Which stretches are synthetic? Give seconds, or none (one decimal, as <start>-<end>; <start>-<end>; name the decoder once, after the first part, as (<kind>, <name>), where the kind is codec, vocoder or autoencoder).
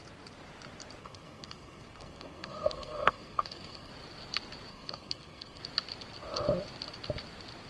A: 1.0-3.9 (codec, SNAC); 4.7-5.6